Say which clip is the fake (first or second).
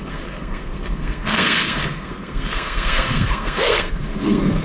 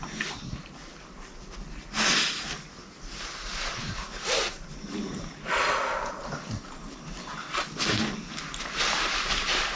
first